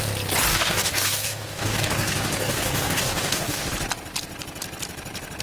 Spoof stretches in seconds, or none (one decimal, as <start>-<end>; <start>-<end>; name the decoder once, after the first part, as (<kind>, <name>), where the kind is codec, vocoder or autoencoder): 0.5-3.7 (codec, DAC)